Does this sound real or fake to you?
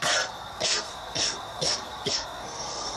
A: fake